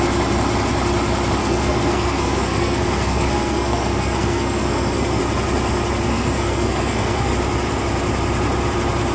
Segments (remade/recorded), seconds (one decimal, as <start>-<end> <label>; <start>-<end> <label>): 0.0-1.4 recorded; 1.4-5.2 remade; 5.2-6.1 recorded; 6.1-7.3 remade; 7.3-9.1 recorded